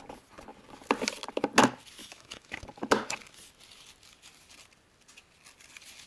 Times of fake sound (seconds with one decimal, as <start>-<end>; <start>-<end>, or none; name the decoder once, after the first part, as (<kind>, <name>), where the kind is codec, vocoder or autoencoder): 2.0-2.6 (autoencoder, DAC-VAE)

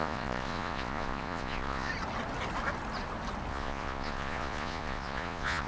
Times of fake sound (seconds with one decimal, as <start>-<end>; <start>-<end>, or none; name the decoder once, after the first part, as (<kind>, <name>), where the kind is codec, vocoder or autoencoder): 0.0-1.9 (vocoder, Vocos); 3.5-5.7

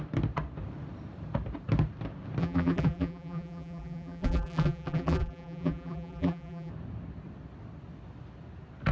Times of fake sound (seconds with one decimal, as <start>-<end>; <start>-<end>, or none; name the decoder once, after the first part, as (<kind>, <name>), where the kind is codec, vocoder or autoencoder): 2.4-6.7 (vocoder, BigVGAN v2)

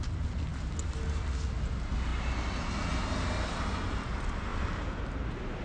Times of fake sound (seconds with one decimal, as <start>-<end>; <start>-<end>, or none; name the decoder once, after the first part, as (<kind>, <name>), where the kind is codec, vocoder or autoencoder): none

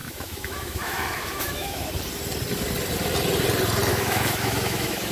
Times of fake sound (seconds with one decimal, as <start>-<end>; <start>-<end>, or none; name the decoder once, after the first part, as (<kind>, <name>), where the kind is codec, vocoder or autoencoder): 0.0-1.9 (autoencoder, DAC-VAE); 3.9-5.1

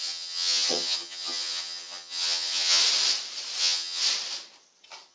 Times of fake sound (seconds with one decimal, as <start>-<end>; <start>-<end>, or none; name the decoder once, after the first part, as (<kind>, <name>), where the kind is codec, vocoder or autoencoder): 0.0-2.8 (vocoder, HiFi-GAN); 3.6-4.0

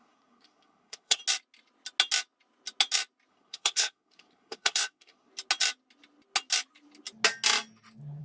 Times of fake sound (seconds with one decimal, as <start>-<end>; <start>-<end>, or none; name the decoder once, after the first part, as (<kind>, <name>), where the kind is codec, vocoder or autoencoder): 0.0-1.2 (codec, SNAC); 3.3-5.3